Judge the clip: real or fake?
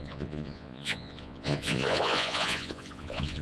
fake